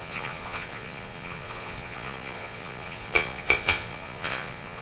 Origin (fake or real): fake